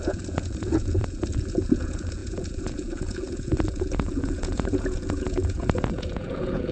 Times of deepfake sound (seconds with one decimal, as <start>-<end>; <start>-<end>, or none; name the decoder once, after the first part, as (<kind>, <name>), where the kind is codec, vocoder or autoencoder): 0.0-6.7 (vocoder, Vocos)